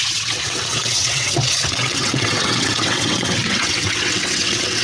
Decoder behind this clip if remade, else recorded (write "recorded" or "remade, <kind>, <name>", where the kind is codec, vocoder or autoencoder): remade, vocoder, WaveNeXt